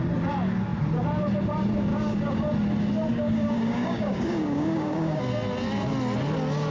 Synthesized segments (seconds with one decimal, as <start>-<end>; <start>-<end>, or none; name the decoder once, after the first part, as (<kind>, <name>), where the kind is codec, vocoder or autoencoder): 1.9-2.4 (codec, DAC); 3.1-5.2